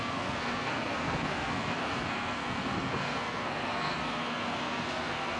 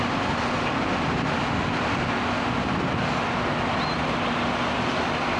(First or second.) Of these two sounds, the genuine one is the second